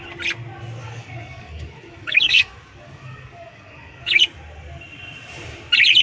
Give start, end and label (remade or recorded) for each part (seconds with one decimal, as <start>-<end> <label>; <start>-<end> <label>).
0.0-0.8 recorded; 0.8-4.2 remade; 4.2-6.0 recorded